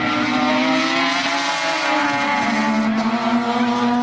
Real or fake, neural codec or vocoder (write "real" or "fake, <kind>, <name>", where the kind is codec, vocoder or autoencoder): real